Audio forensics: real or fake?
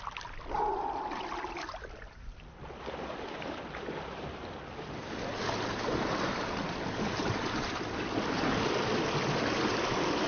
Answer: real